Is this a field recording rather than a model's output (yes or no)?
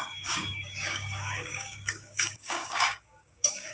no